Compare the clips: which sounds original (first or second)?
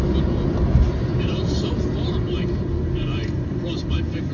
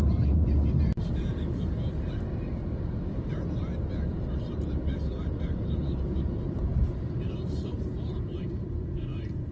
first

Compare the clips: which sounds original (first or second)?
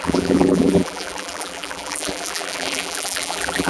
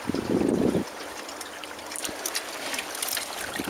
second